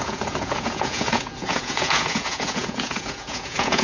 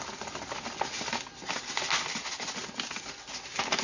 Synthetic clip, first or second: first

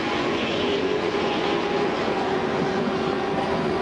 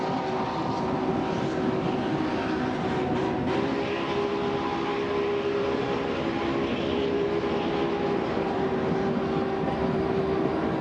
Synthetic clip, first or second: first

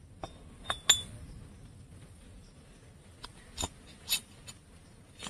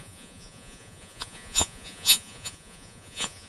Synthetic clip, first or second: second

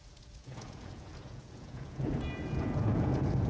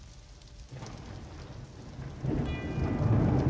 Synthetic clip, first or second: first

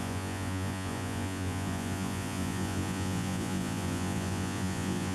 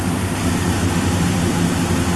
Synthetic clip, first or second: first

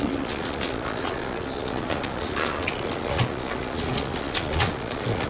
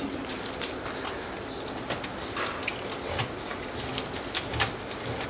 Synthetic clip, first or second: first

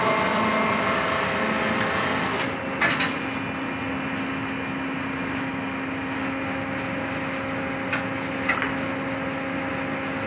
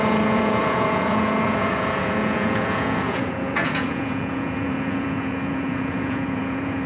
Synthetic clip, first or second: second